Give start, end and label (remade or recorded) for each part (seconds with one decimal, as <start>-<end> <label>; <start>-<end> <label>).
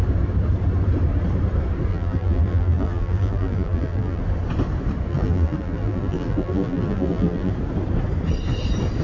0.0-1.9 recorded; 1.9-4.2 remade; 4.2-5.1 recorded; 5.1-7.5 remade; 7.5-9.0 recorded